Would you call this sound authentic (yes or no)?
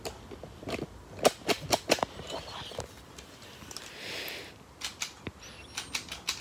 yes